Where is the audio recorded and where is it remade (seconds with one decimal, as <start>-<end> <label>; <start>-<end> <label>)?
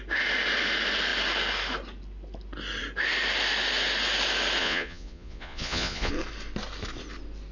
0.0-4.6 recorded; 4.6-6.1 remade; 6.1-7.5 recorded